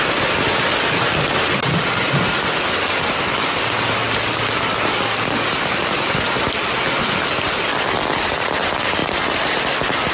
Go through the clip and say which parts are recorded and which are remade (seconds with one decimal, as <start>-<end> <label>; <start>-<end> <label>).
0.0-4.0 recorded; 4.0-8.6 remade; 8.6-10.1 recorded